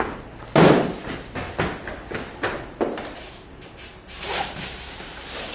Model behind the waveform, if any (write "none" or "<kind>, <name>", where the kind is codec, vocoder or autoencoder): none